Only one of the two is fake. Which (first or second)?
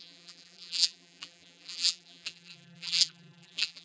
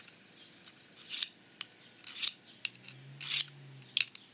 first